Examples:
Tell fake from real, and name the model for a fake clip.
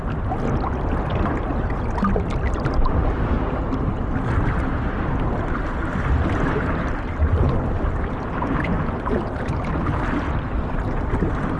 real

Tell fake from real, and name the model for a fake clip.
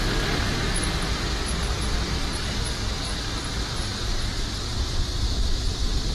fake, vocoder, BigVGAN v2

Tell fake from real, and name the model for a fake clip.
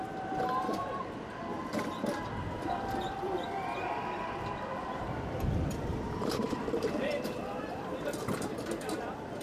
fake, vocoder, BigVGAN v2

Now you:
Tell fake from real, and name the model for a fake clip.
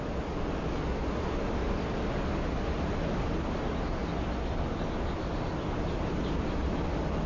real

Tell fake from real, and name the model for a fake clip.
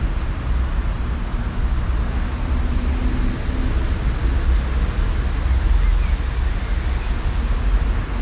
real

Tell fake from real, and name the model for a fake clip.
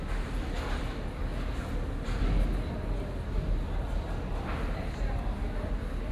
real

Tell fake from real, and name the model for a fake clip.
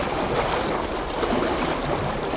real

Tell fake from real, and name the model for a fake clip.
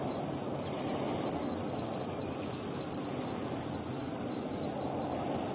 fake, vocoder, BigVGAN v2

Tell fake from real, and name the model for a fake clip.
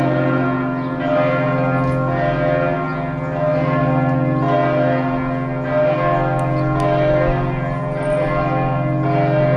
real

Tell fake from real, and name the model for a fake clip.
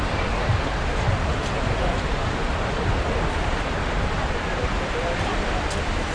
fake, vocoder, BigVGAN v2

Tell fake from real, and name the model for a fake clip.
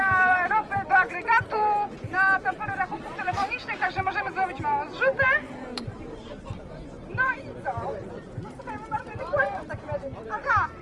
fake, vocoder, BigVGAN v2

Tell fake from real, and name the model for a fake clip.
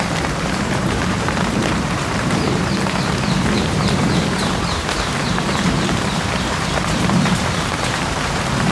fake, vocoder, BigVGAN v2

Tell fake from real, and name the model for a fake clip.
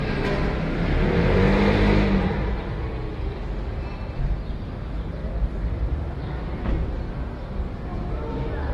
real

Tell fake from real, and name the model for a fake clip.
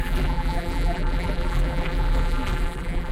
fake, vocoder, BigVGAN v2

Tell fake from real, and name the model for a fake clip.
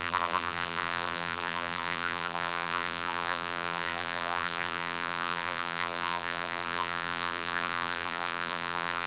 fake, vocoder, BigVGAN v2